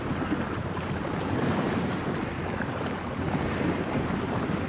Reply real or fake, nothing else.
real